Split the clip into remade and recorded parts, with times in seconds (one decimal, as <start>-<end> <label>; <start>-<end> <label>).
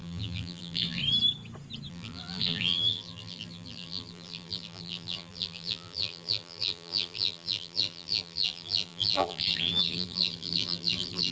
0.0-1.0 remade; 1.0-1.9 recorded; 1.9-11.3 remade